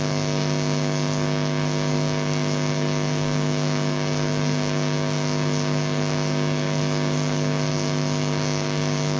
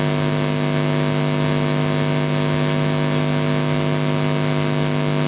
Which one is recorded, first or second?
second